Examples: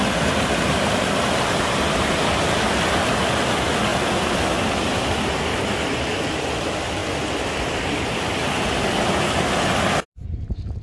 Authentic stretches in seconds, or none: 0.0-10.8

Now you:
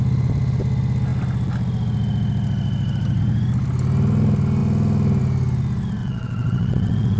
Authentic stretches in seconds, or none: 0.0-6.0